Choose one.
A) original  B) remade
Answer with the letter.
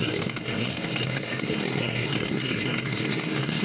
B